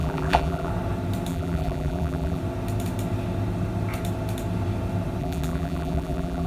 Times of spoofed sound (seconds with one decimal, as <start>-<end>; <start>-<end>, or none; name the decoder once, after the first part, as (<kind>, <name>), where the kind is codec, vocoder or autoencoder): 0.0-0.7 (vocoder, BigVGAN v2); 1.3-2.4; 5.2-6.5